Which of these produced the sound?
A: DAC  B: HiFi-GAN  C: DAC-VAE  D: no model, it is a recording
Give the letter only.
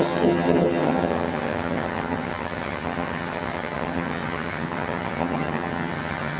B